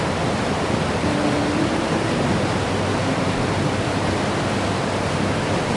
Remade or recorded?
recorded